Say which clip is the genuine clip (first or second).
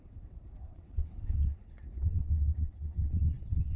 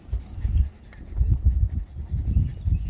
second